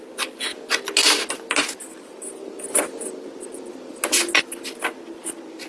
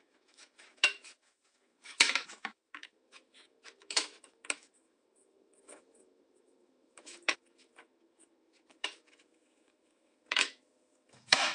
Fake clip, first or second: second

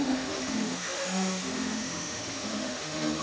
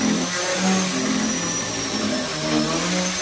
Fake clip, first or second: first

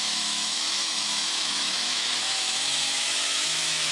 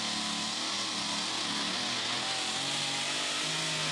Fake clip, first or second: first